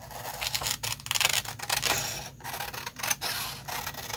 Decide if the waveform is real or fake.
real